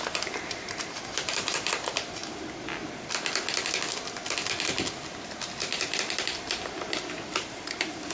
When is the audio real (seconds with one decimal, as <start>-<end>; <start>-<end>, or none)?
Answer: 2.2-7.1